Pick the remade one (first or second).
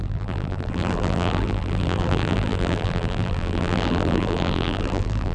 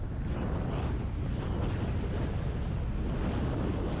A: first